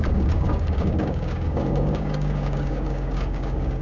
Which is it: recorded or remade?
remade